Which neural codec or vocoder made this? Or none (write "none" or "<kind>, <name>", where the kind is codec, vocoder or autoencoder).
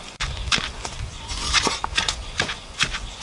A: vocoder, Vocos